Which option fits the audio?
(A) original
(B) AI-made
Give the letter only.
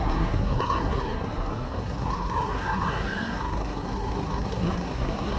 B